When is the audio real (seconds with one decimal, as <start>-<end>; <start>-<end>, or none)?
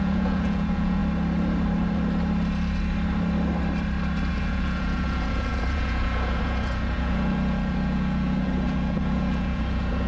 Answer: 1.0-4.3